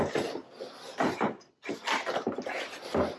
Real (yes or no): yes